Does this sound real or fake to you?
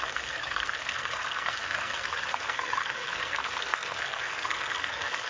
fake